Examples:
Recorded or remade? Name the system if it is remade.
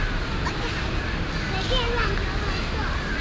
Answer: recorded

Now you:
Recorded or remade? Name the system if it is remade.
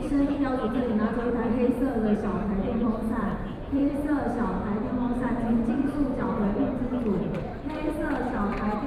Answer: remade, vocoder, BigVGAN v2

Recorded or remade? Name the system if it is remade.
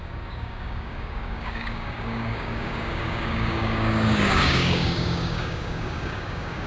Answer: remade, codec, DAC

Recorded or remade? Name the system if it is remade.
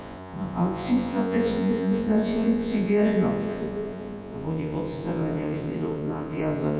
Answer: remade, vocoder, Vocos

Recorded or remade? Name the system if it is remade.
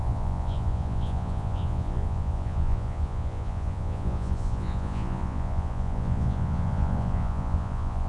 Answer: remade, vocoder, Vocos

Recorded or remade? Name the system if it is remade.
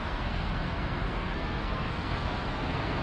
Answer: remade, codec, SNAC